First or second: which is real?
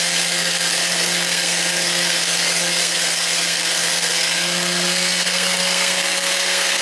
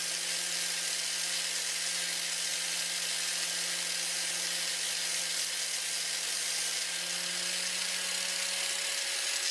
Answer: second